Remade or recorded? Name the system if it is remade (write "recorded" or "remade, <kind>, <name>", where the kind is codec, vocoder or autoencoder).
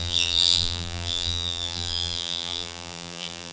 remade, vocoder, BigVGAN v2